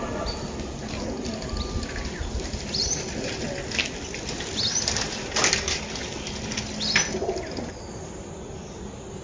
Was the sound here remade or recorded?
recorded